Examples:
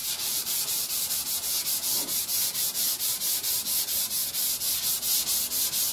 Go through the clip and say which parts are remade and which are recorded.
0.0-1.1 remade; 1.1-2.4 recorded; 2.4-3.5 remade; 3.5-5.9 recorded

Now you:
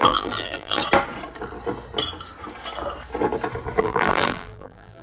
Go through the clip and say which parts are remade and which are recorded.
0.0-0.8 remade; 0.8-3.8 recorded; 3.8-5.0 remade

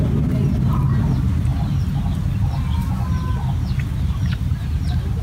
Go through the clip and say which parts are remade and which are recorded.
0.0-5.2 recorded